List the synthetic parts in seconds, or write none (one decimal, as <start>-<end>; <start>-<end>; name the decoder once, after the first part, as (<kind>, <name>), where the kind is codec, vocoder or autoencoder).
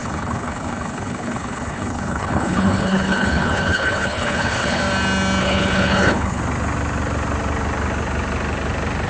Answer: 0.0-4.8 (codec, HILCodec); 5.4-6.4